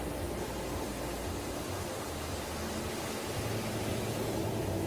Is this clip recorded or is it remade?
recorded